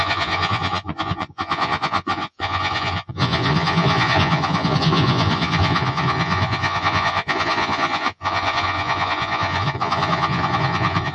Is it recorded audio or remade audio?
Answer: remade